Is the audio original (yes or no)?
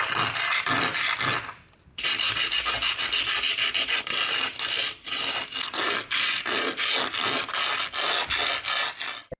yes